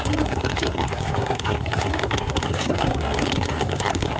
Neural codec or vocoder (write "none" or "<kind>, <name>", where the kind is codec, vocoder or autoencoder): codec, SNAC